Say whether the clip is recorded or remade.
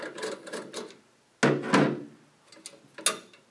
recorded